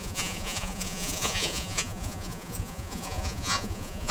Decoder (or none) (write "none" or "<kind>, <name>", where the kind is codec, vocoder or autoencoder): vocoder, Vocos